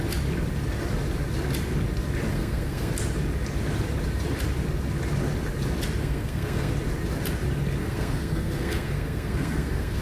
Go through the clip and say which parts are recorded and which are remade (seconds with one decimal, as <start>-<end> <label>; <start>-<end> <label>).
0.0-2.3 recorded; 2.3-2.9 remade; 2.9-6.0 recorded; 6.0-6.7 remade; 6.7-7.8 recorded; 7.8-10.0 remade